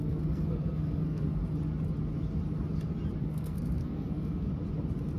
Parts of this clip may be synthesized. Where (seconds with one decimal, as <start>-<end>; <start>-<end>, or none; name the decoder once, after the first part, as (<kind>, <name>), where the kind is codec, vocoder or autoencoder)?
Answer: 0.0-1.4 (codec, SNAC); 3.2-4.5